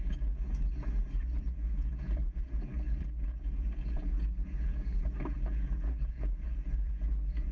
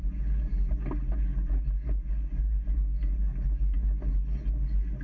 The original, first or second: second